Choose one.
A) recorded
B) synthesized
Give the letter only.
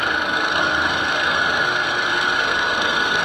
B